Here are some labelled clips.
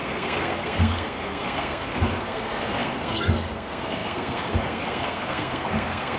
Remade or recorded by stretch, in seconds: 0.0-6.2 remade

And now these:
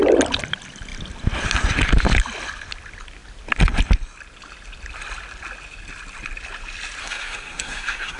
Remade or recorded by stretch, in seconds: 0.0-7.0 recorded; 7.0-8.2 remade